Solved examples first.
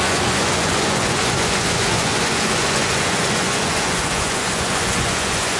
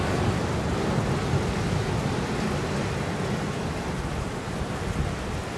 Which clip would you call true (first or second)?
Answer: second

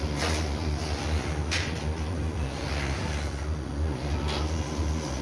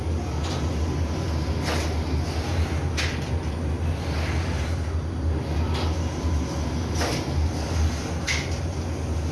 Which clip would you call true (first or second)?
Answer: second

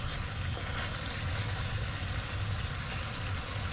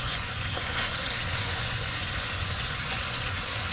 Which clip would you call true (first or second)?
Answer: first